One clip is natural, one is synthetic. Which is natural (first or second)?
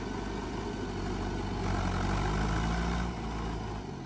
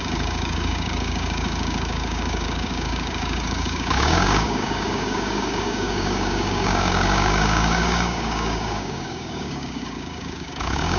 first